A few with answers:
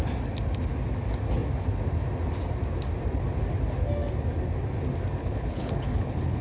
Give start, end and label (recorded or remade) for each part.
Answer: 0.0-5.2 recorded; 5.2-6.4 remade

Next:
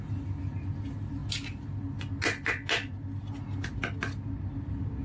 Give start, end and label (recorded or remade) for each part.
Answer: 0.0-5.0 recorded

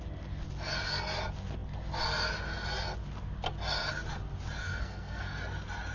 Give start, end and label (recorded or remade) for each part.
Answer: 0.0-4.6 recorded; 4.6-5.2 remade; 5.2-5.9 recorded

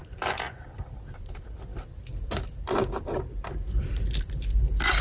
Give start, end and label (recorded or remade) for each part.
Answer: 0.0-5.0 recorded